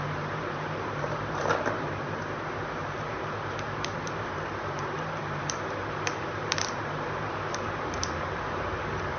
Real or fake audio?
fake